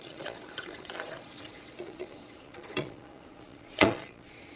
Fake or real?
fake